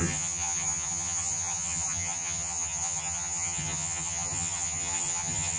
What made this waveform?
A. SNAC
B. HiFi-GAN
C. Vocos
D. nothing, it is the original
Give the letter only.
B